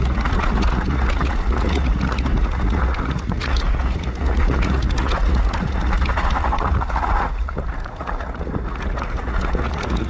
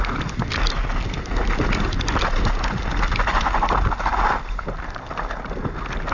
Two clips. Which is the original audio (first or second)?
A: second